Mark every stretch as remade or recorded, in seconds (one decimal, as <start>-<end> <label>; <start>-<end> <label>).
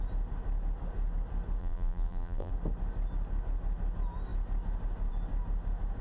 0.0-1.6 recorded; 1.6-2.5 remade; 2.5-6.0 recorded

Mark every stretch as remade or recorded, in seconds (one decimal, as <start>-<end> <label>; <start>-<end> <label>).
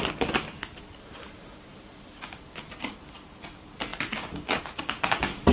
0.0-5.5 recorded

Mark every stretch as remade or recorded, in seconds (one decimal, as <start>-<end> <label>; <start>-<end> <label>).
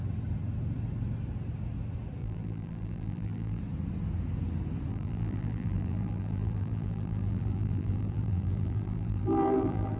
0.0-2.2 recorded; 2.2-3.6 remade; 3.6-4.9 recorded; 4.9-10.0 remade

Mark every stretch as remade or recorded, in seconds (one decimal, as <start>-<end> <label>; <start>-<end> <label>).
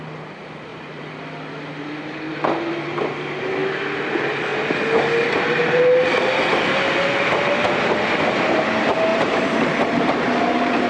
0.0-0.7 recorded; 0.7-1.3 remade; 1.3-9.1 recorded; 9.1-10.9 remade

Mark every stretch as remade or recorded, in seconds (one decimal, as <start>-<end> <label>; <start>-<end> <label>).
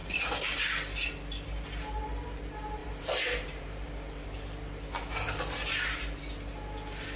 0.0-0.6 remade; 0.6-2.8 recorded; 2.8-3.9 remade; 3.9-7.2 recorded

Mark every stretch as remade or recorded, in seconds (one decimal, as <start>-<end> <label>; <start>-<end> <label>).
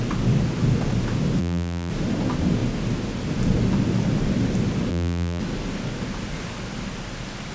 0.0-1.4 recorded; 1.4-1.9 remade; 1.9-4.9 recorded; 4.9-5.4 remade; 5.4-7.5 recorded